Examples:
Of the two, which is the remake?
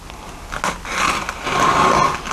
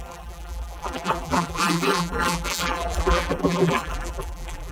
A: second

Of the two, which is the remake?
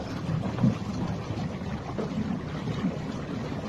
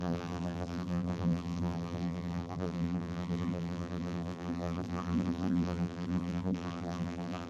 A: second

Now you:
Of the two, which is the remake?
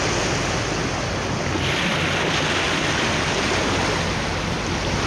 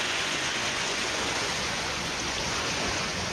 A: second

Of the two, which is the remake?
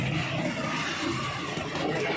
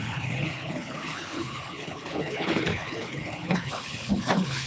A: second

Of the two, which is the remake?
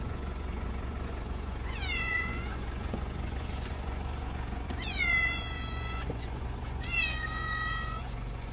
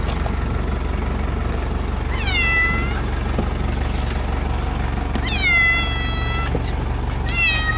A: first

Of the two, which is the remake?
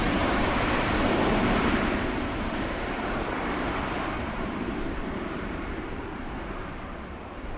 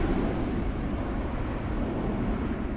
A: first